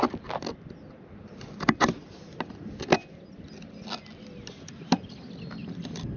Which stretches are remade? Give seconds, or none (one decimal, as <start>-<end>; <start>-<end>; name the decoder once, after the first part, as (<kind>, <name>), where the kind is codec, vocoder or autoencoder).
5.6-6.2 (vocoder, BigVGAN v2)